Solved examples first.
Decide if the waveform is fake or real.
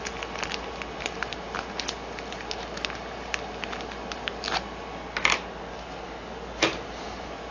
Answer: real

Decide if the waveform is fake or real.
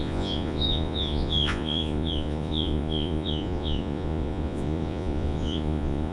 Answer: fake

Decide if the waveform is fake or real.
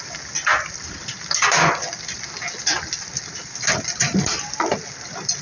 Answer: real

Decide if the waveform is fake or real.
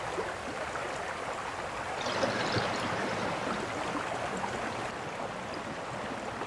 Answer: real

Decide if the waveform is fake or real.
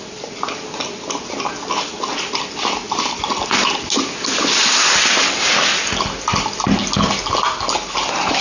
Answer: real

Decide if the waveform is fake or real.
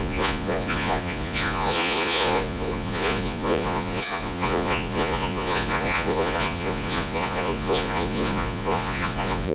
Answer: fake